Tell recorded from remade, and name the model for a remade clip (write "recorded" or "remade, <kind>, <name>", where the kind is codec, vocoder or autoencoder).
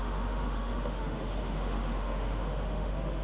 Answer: remade, autoencoder, DAC-VAE